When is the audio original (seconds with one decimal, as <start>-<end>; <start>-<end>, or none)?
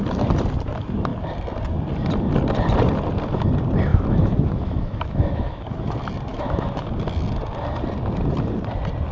0.0-3.9; 5.6-6.3; 6.9-9.1